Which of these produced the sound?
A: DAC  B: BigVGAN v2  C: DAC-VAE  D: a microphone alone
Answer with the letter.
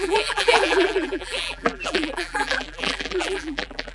B